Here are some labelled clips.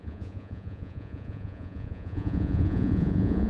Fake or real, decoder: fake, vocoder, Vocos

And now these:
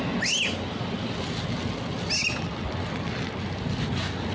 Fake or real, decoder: real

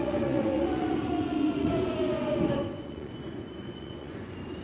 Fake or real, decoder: fake, vocoder, Vocos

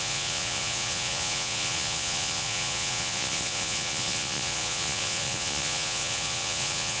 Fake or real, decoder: fake, vocoder, Vocos